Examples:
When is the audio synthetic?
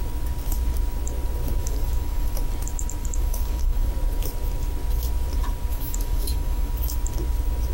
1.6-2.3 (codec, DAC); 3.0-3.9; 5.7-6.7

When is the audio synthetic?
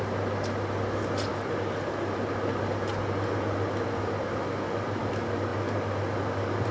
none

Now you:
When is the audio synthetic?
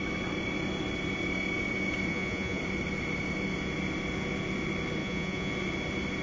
2.1-2.6 (vocoder, Vocos); 5.0-5.5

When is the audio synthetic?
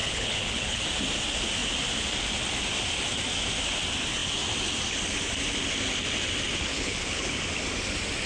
0.0-0.8 (codec, HILCodec); 6.7-7.4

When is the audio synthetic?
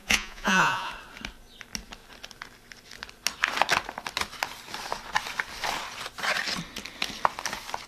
0.0-0.9 (vocoder, Vocos)